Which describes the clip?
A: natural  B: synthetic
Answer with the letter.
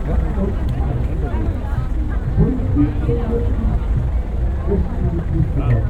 A